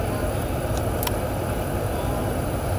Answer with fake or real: real